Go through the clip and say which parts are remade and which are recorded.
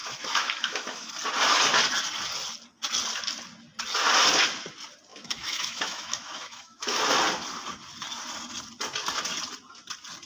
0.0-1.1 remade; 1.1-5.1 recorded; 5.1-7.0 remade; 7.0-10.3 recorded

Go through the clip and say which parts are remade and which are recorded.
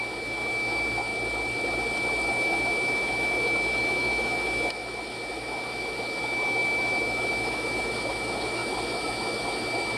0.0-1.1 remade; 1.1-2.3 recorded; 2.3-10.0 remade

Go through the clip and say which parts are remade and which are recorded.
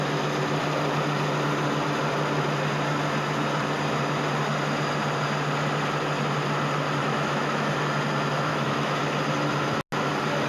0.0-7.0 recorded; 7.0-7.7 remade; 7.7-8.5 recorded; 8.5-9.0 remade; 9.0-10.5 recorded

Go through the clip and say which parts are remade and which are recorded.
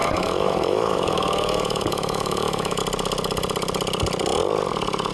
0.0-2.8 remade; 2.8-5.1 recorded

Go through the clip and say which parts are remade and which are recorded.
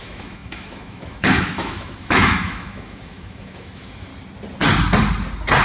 0.0-4.1 remade; 4.1-5.6 recorded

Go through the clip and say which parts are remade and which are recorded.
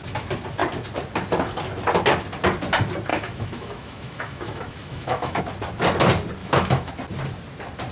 0.0-3.1 recorded; 3.1-5.4 remade; 5.4-6.4 recorded; 6.4-6.9 remade; 6.9-7.9 recorded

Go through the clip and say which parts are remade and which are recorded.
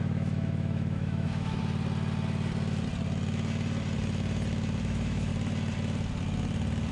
0.0-1.6 remade; 1.6-4.8 recorded; 4.8-5.3 remade; 5.3-6.9 recorded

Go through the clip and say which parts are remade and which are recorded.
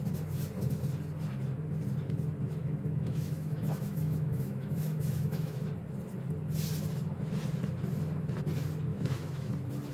0.0-2.6 recorded; 2.6-5.7 remade; 5.7-8.9 recorded; 8.9-9.5 remade; 9.5-9.9 recorded